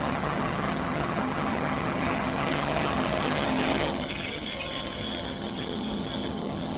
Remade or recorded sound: remade